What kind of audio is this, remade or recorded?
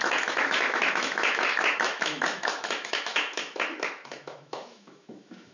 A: remade